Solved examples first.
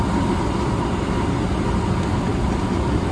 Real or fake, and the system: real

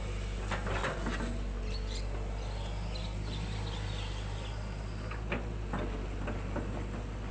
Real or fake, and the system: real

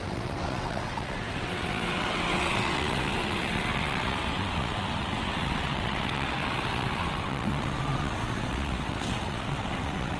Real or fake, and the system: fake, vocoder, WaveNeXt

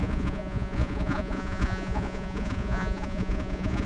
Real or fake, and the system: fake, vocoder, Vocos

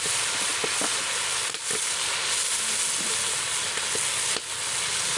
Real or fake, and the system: real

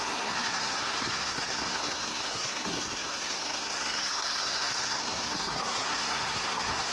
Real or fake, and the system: fake, codec, SNAC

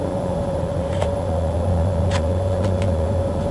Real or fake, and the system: fake, vocoder, Vocos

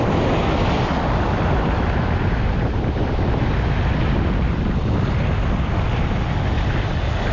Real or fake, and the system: real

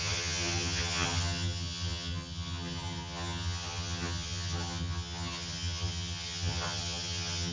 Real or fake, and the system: fake, vocoder, HiFi-GAN